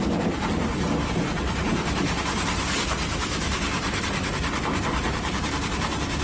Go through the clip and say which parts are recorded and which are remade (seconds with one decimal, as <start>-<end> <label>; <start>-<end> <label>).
0.0-3.1 recorded; 3.1-3.6 remade; 3.6-6.2 recorded